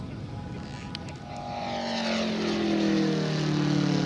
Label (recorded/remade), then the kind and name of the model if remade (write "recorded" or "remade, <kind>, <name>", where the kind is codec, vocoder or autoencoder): recorded